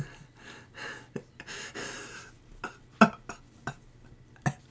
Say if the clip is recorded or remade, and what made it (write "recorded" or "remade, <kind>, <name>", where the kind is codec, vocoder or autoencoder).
recorded